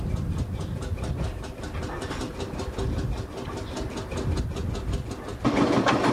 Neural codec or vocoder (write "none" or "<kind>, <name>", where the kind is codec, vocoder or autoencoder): none